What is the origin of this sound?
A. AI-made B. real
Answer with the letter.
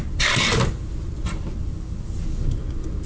A